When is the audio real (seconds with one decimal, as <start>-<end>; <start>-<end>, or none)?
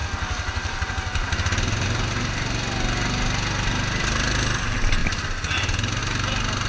0.0-6.7